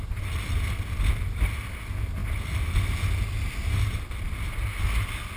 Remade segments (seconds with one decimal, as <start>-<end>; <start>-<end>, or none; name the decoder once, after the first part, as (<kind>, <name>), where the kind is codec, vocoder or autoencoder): none